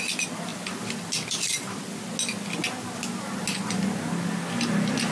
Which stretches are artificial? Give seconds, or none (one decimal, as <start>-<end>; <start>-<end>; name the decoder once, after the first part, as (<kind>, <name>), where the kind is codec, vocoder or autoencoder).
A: none